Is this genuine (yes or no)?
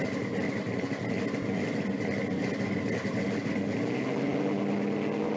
yes